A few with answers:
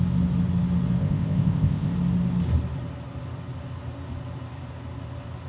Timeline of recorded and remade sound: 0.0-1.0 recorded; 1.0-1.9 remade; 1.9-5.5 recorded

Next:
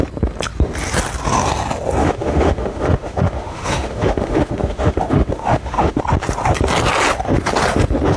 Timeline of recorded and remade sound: 0.0-2.0 recorded; 2.0-6.0 remade; 6.0-8.2 recorded

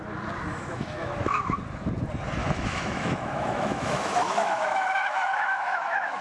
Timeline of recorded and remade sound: 0.0-0.5 recorded; 0.5-1.6 remade; 1.6-2.4 recorded; 2.4-6.2 remade

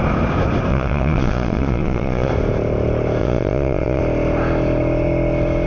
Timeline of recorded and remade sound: 0.0-0.7 recorded; 0.7-2.3 remade; 2.3-3.2 recorded; 3.2-4.0 remade; 4.0-5.7 recorded